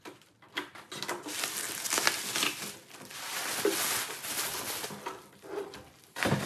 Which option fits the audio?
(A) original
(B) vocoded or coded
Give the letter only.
A